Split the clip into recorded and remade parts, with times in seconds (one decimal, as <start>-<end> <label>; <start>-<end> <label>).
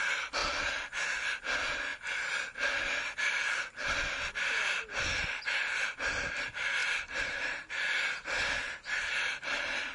0.0-9.9 recorded